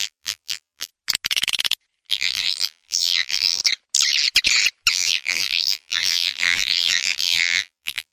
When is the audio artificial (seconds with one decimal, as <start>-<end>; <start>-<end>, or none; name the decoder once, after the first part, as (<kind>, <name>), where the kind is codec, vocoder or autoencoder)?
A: 0.0-0.9 (vocoder, BigVGAN v2); 2.1-3.6; 4.9-8.1